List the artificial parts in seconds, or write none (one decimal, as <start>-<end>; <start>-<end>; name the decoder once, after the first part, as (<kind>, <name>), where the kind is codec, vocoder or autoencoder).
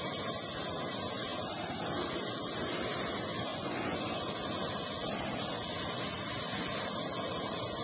3.5-4.3 (vocoder, Vocos)